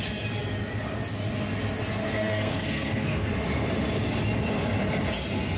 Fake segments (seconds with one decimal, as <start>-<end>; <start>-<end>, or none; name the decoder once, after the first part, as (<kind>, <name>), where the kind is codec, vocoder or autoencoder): 2.0-3.3 (codec, SNAC)